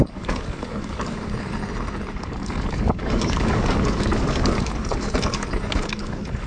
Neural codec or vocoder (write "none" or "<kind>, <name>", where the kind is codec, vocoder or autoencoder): codec, DAC